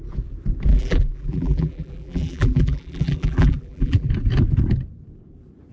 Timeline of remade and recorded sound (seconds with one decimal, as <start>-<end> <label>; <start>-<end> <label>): 0.0-0.7 recorded; 0.7-4.1 remade; 4.1-5.7 recorded